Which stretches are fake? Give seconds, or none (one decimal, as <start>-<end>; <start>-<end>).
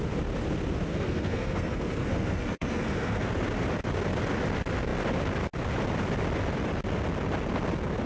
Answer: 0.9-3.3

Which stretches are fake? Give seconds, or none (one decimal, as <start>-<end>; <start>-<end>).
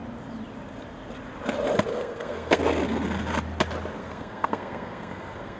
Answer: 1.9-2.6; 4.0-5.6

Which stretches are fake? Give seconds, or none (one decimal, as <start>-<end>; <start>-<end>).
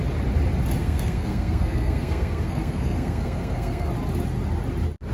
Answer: 0.8-3.9